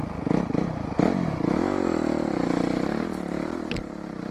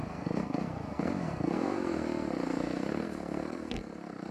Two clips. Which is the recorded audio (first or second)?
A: first